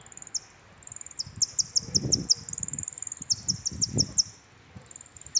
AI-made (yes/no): no